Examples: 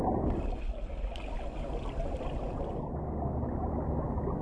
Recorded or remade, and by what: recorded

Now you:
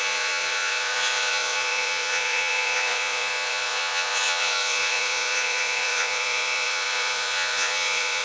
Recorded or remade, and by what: remade, vocoder, Vocos